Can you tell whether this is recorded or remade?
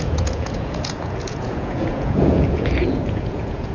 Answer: remade